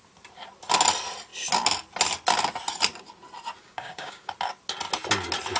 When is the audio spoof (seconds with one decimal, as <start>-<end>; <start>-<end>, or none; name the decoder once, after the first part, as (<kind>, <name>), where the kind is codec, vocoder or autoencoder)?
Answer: 3.6-4.3 (codec, DAC)